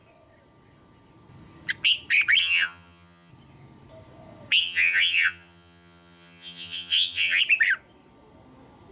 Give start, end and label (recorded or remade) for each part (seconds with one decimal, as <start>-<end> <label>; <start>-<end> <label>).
0.0-2.4 recorded; 2.4-3.3 remade; 3.3-4.6 recorded; 4.6-7.4 remade; 7.4-8.9 recorded